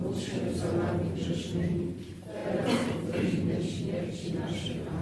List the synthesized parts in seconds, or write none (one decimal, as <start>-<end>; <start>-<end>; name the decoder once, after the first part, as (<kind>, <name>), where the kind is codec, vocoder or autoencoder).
2.4-5.0 (vocoder, BigVGAN v2)